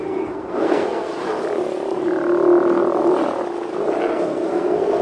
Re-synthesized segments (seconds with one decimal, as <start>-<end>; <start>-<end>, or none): 0.0-1.1; 4.1-5.0